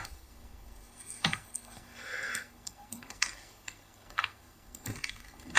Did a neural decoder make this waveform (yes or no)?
yes